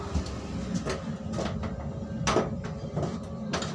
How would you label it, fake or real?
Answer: real